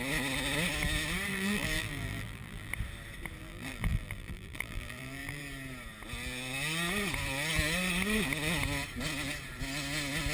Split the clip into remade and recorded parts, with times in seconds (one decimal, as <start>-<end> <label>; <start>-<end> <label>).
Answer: 0.0-1.3 recorded; 1.3-2.7 remade; 2.7-3.4 recorded; 3.4-5.4 remade; 5.4-10.3 recorded